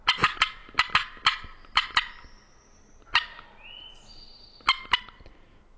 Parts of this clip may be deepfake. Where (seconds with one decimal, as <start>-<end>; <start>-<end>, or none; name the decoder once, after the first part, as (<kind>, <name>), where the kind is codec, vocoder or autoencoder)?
none